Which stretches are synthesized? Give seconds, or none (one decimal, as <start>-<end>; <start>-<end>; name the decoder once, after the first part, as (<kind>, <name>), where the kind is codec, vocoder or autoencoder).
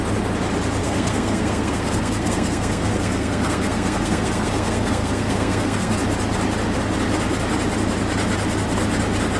0.8-5.9 (codec, SNAC)